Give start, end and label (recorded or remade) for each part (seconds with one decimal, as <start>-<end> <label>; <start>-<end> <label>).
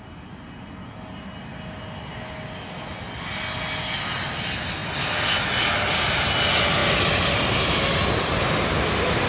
0.0-9.3 recorded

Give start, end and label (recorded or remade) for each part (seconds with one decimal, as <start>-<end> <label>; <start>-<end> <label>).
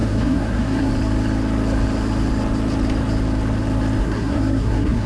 0.0-0.9 remade; 0.9-4.0 recorded; 4.0-5.1 remade